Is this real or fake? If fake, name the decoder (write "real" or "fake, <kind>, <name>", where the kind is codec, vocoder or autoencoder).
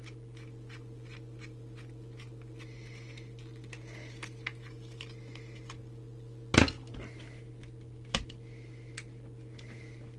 real